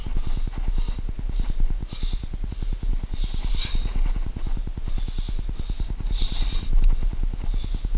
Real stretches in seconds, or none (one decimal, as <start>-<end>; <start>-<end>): 0.0-1.8; 2.5-6.2; 6.8-8.0